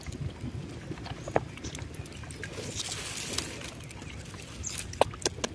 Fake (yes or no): no